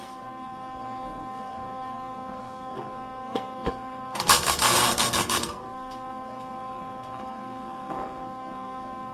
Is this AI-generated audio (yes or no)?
yes